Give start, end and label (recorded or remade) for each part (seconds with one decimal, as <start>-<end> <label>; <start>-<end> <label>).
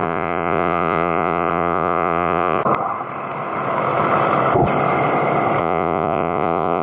0.0-2.6 remade; 2.6-5.6 recorded; 5.6-6.8 remade